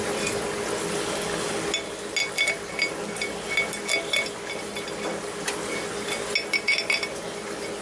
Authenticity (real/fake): real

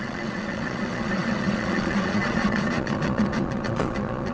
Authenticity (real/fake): fake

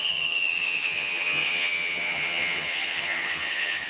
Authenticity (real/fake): fake